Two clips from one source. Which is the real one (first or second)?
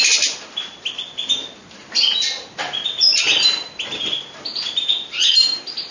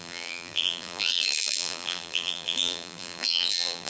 first